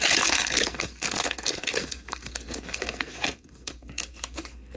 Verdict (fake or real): fake